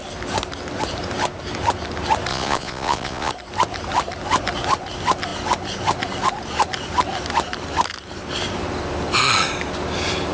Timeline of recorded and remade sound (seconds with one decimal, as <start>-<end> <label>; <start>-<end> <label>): 0.0-2.3 recorded; 2.3-3.3 remade; 3.3-10.3 recorded

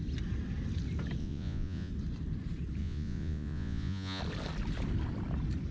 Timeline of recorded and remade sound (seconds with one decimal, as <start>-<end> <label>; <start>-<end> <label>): 0.0-1.2 recorded; 1.2-1.9 remade; 1.9-2.8 recorded; 2.8-4.2 remade; 4.2-5.7 recorded

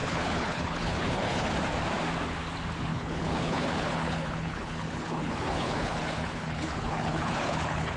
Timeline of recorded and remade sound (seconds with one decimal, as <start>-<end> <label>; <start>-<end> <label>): 0.0-1.5 remade; 1.5-2.9 recorded; 2.9-8.0 remade

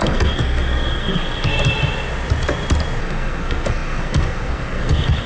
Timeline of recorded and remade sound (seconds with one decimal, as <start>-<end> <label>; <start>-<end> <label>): 0.0-1.5 remade; 1.5-3.0 recorded; 3.0-5.3 remade

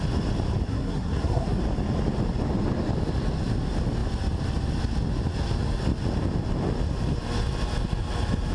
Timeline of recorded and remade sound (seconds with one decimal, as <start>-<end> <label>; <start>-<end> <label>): 0.0-0.7 recorded; 0.7-1.6 remade; 1.6-8.5 recorded

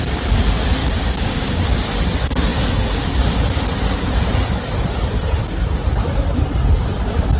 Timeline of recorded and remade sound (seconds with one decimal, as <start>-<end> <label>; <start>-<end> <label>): 0.0-0.8 recorded; 0.8-1.6 remade; 1.6-7.4 recorded

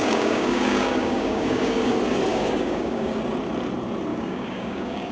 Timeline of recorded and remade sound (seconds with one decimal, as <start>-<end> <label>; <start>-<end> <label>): 0.0-1.9 remade; 1.9-2.3 recorded; 2.3-3.1 remade; 3.1-4.1 recorded; 4.1-5.1 remade